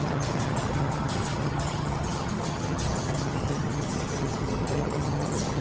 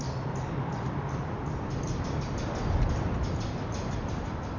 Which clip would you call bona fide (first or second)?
second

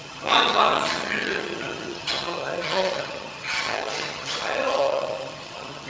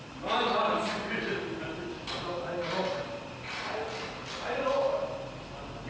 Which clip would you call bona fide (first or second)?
second